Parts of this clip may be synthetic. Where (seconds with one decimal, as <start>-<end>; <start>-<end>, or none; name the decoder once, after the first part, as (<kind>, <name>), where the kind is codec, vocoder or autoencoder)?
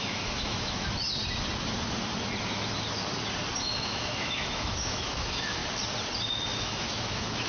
0.0-1.0 (autoencoder, DAC-VAE); 3.6-5.6; 6.6-7.5